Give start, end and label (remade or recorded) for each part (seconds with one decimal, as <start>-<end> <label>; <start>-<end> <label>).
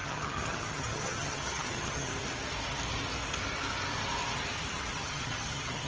0.0-2.1 remade; 2.1-4.9 recorded; 4.9-5.9 remade